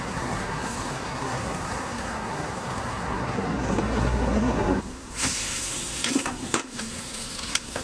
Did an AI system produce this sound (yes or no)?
yes